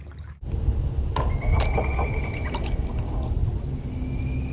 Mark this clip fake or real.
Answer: real